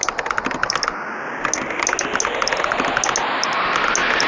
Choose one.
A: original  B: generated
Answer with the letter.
A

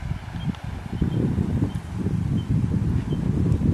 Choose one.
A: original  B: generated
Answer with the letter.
A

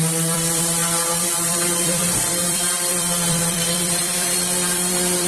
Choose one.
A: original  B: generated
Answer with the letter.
B